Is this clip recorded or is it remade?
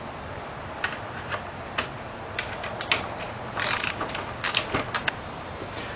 recorded